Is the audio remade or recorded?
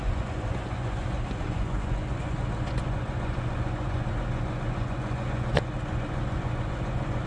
remade